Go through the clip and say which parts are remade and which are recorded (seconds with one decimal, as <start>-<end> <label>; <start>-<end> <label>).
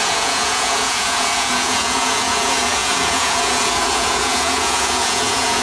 0.0-5.6 remade